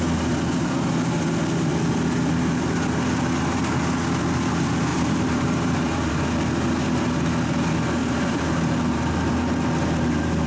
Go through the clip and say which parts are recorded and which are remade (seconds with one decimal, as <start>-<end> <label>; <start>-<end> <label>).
0.0-4.9 recorded; 4.9-6.1 remade; 6.1-8.0 recorded; 8.0-9.3 remade; 9.3-10.5 recorded